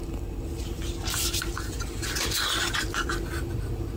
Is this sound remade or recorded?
recorded